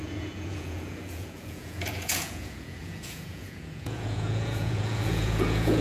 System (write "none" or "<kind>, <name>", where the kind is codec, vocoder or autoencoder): vocoder, Vocos